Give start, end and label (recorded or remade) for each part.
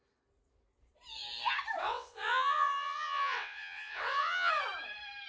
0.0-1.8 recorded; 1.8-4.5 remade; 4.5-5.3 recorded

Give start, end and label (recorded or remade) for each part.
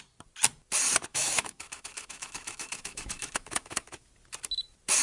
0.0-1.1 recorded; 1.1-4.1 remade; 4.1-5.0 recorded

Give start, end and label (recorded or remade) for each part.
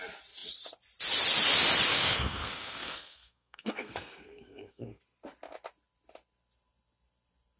0.0-1.9 recorded; 1.9-5.0 remade; 5.0-7.6 recorded